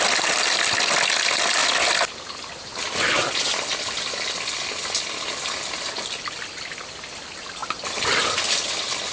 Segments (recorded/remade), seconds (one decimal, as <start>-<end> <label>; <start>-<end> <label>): 0.0-9.1 recorded